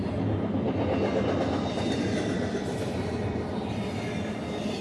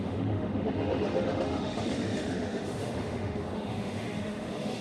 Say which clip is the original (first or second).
first